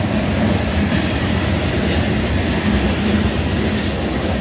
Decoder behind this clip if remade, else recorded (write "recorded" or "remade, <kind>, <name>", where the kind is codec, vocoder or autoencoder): recorded